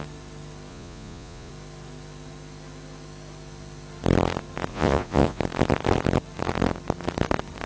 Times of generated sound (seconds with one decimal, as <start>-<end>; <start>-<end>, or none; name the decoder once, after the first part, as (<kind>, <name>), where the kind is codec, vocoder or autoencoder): 0.7-1.5 (vocoder, Vocos); 4.7-5.4